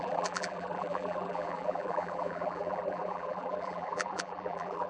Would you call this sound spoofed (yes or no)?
yes